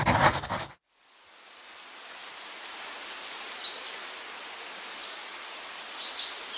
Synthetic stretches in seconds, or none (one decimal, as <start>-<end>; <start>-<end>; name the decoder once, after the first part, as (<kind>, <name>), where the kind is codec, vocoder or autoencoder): none